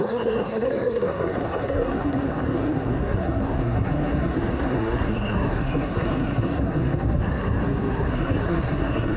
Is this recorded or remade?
remade